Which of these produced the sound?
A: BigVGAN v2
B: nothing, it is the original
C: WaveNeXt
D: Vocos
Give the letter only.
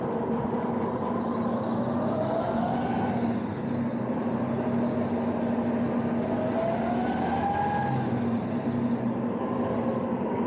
B